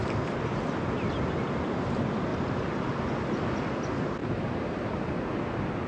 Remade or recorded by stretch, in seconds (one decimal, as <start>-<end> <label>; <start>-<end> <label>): 0.0-1.5 remade; 1.5-2.3 recorded; 2.3-2.8 remade; 2.8-4.2 recorded; 4.2-5.1 remade; 5.1-5.9 recorded

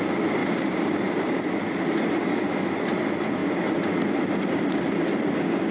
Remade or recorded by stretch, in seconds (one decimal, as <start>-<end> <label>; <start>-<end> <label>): 0.0-0.4 recorded; 0.4-1.5 remade; 1.5-5.7 recorded

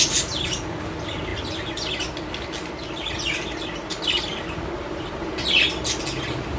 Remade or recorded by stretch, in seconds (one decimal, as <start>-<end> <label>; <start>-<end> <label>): 0.0-6.6 recorded

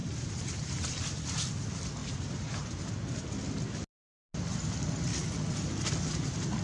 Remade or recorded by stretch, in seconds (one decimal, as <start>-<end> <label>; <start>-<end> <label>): 0.0-1.4 remade; 1.4-2.0 recorded; 2.0-2.9 remade; 2.9-6.6 recorded

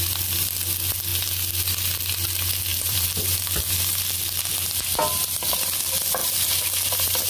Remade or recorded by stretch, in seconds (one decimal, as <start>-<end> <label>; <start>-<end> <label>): 0.0-2.7 recorded; 2.7-3.4 remade; 3.4-6.2 recorded; 6.2-7.3 remade

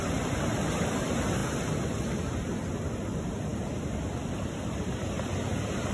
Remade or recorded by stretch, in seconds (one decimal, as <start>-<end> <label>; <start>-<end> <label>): 0.0-5.9 recorded

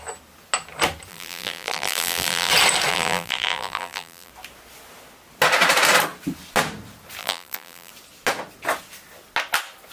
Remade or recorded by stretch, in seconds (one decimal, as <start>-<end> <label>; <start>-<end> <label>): 0.0-1.1 recorded; 1.1-2.5 remade; 2.5-2.9 recorded; 2.9-4.3 remade; 4.3-7.2 recorded; 7.2-7.9 remade; 7.9-9.9 recorded

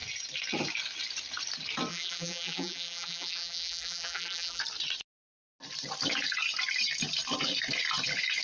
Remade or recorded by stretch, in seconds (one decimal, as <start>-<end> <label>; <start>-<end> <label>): 0.0-1.9 recorded; 1.9-4.6 remade; 4.6-8.4 recorded